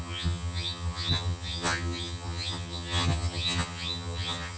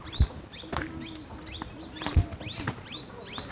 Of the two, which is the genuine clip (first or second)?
second